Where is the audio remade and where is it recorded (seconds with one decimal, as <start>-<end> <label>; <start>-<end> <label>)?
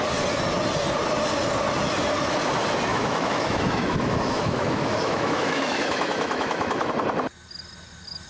0.0-2.9 recorded; 2.9-6.9 remade; 6.9-8.3 recorded